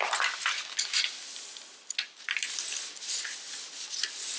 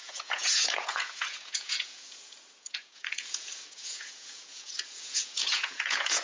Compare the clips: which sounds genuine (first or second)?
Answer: first